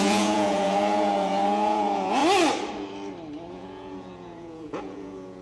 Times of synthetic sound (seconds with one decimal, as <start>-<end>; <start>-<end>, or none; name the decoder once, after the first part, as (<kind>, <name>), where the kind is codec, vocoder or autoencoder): 0.0-2.2 (vocoder, Vocos); 3.5-5.4